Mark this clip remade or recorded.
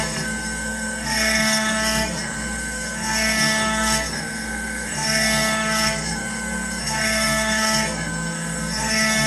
remade